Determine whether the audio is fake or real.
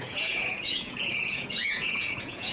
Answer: fake